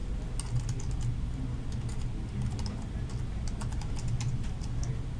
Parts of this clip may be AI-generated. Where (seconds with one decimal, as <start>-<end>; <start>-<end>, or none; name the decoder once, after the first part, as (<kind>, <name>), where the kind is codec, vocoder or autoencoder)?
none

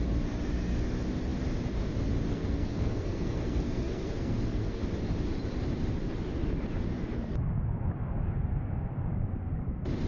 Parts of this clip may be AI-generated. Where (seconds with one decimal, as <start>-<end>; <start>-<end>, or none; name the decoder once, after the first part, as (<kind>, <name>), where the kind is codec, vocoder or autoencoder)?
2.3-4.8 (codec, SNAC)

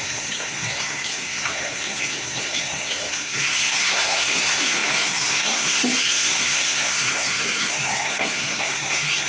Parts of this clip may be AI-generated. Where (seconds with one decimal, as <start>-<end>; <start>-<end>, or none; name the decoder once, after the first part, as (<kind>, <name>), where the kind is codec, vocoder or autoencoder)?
0.0-9.3 (codec, SNAC)

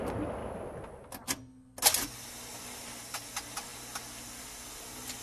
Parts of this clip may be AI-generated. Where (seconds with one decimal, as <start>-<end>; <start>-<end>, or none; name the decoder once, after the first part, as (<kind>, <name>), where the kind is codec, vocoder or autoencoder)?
none